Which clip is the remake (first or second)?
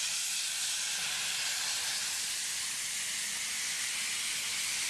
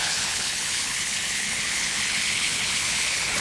second